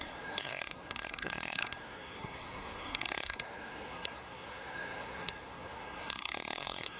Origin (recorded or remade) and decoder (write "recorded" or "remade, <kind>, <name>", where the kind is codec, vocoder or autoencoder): remade, codec, SNAC